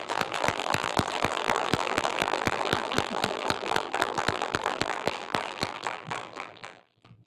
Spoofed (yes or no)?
yes